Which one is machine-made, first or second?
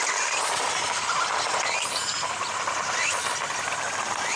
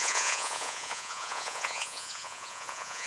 second